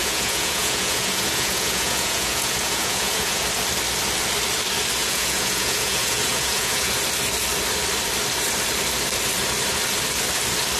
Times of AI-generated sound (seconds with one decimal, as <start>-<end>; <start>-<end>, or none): 0.0-3.4; 5.0-6.9